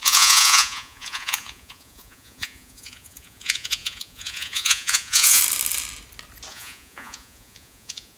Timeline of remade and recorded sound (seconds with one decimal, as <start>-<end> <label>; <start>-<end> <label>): 0.0-5.4 remade; 5.4-6.5 recorded; 6.5-8.2 remade